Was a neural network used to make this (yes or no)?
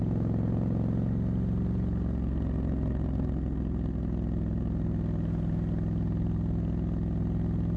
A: no